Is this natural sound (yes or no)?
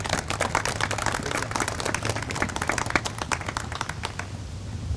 yes